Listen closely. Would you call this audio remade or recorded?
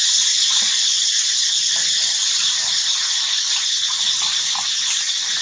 recorded